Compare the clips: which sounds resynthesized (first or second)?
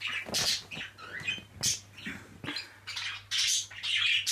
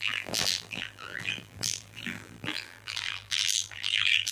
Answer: second